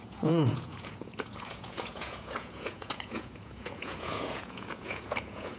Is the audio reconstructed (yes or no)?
yes